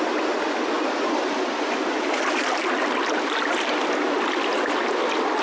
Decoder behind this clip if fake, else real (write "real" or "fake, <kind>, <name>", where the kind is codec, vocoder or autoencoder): real